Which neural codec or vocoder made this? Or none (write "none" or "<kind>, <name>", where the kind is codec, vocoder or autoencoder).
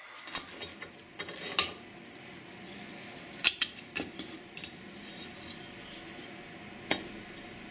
none